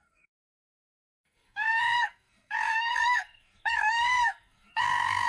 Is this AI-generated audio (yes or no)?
yes